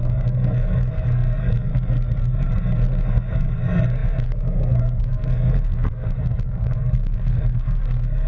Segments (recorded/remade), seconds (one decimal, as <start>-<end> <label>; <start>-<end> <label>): 0.0-8.3 remade